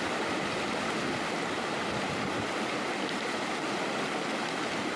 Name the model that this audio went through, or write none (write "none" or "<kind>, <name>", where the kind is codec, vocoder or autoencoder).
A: none